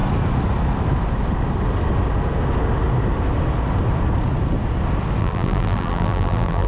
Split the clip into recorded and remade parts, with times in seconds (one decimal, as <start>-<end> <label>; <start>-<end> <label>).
0.0-5.2 recorded; 5.2-6.7 remade